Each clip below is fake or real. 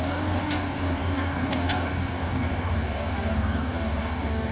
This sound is fake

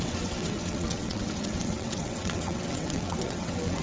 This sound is fake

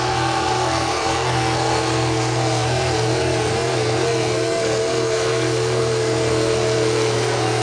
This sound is fake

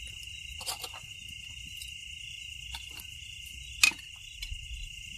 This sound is real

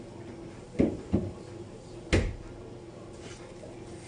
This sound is real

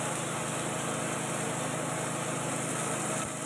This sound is real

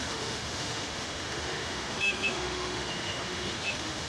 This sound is fake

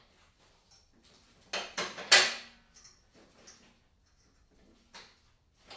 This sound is real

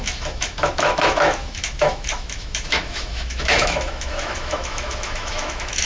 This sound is fake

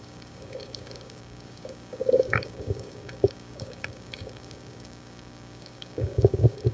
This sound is fake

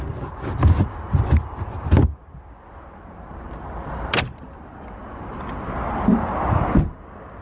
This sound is real